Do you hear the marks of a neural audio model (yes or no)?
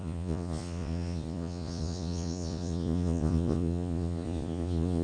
yes